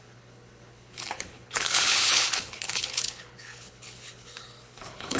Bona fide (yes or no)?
no